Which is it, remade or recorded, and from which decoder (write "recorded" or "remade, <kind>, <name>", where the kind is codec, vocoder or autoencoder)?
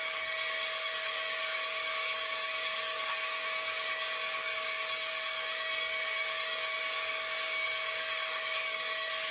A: remade, codec, DAC